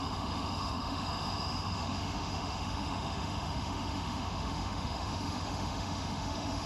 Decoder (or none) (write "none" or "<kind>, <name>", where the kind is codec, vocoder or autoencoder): autoencoder, DAC-VAE